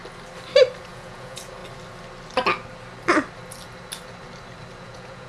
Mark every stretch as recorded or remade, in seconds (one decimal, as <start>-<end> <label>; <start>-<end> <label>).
0.0-0.9 recorded; 0.9-1.6 remade; 1.6-4.8 recorded; 4.8-5.3 remade